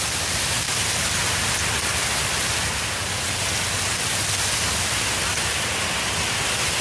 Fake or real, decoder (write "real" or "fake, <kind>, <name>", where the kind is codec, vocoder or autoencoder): real